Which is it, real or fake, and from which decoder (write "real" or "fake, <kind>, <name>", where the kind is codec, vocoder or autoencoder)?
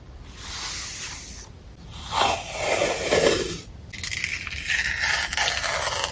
real